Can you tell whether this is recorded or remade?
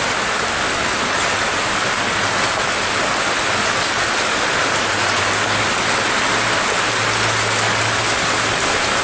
recorded